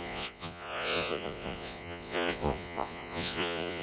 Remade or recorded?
remade